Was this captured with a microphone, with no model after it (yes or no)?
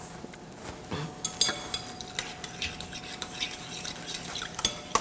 yes